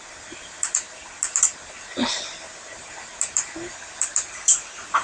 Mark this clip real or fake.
real